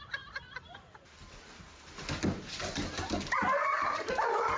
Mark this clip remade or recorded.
remade